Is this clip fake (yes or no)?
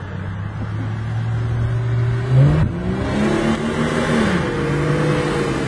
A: no